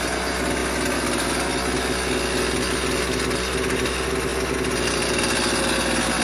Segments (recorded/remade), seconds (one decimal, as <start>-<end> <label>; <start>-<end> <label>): 0.0-6.2 recorded